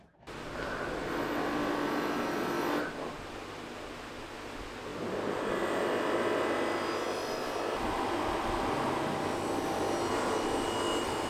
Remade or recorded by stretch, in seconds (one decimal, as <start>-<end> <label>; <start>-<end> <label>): 0.0-11.3 recorded